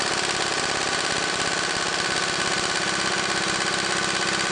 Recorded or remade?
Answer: recorded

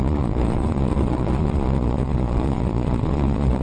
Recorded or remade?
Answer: remade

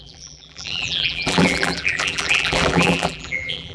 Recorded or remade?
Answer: remade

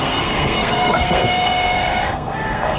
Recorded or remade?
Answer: remade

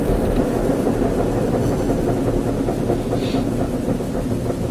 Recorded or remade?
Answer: recorded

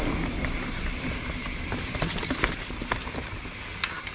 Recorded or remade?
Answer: recorded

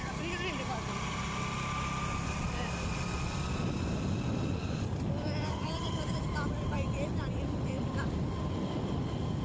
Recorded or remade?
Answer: recorded